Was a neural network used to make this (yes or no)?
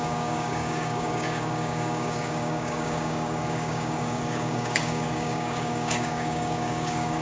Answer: yes